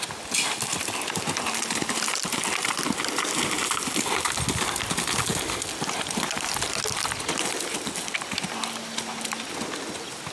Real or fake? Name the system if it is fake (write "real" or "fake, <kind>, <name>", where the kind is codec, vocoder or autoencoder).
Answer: real